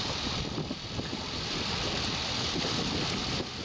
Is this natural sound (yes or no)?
yes